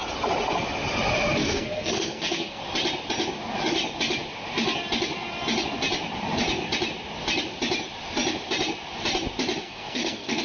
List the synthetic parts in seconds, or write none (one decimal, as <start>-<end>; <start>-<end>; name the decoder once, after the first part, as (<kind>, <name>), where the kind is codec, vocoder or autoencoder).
1.4-2.6 (codec, SNAC); 9.6-10.4